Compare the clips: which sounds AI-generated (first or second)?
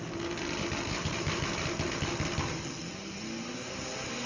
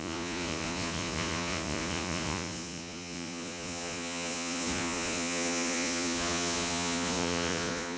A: second